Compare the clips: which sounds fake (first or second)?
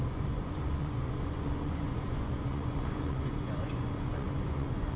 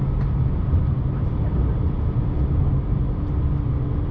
first